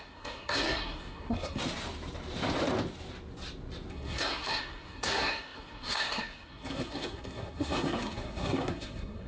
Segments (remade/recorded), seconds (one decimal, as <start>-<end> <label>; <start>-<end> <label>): 0.0-1.6 remade; 1.6-3.9 recorded; 3.9-9.3 remade